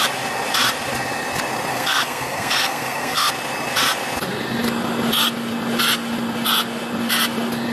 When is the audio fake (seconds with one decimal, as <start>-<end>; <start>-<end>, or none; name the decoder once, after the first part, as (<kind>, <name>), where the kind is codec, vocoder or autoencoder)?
1.7-3.3 (codec, SNAC)